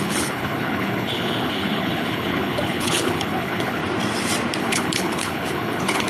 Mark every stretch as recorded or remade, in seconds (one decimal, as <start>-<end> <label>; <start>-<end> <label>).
0.0-3.8 remade; 3.8-4.6 recorded; 4.6-6.1 remade